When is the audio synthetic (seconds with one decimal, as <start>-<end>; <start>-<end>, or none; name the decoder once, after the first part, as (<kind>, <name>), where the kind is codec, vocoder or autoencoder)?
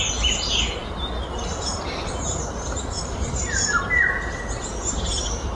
none